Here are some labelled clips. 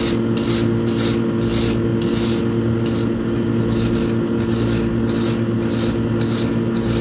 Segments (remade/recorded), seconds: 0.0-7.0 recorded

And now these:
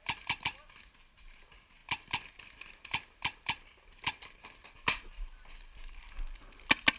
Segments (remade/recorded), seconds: 0.0-7.0 recorded

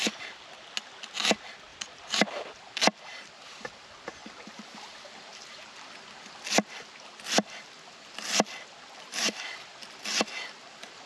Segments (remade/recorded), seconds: 0.0-1.7 recorded; 1.7-2.3 remade; 2.3-4.2 recorded; 4.2-5.8 remade; 5.8-11.1 recorded